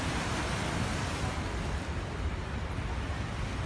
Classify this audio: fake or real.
real